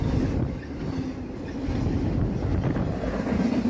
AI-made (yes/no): no